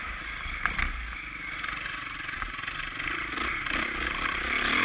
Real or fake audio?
real